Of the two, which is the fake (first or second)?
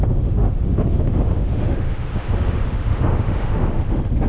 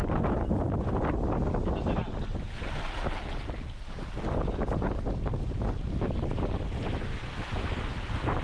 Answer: first